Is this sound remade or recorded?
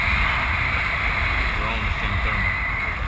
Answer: recorded